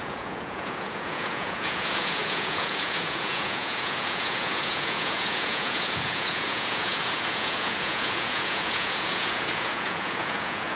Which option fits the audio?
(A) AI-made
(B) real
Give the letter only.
A